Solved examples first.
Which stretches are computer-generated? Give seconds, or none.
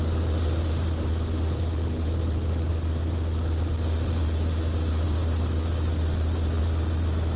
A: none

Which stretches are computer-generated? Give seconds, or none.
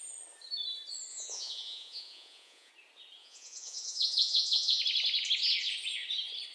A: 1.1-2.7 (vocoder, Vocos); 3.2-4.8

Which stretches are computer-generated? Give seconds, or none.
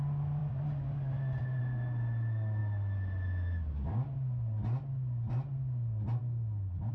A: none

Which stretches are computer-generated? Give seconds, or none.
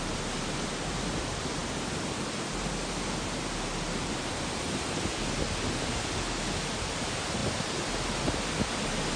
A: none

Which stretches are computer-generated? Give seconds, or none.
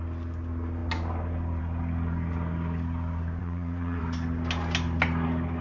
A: 3.4-4.0 (vocoder, Vocos)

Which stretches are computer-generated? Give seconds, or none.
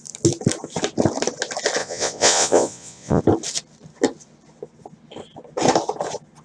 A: 1.8-3.2 (vocoder, Vocos)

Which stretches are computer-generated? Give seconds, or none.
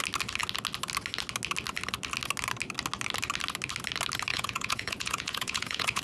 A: 4.3-6.0 (vocoder, Vocos)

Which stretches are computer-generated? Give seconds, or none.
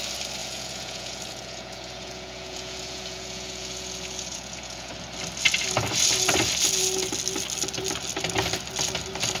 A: 0.4-4.9 (vocoder, Vocos)